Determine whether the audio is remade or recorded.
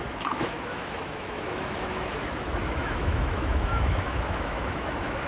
remade